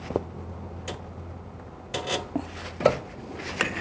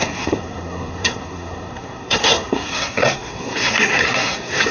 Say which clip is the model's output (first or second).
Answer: second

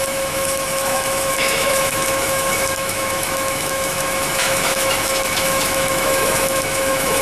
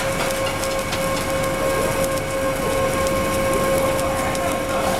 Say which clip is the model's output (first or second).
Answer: first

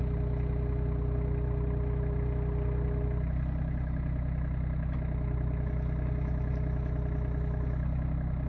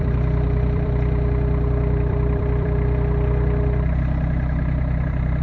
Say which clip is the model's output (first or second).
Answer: second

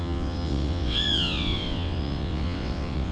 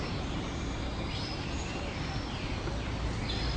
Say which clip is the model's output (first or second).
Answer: first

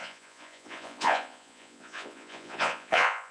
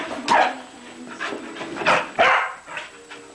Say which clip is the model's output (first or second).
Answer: first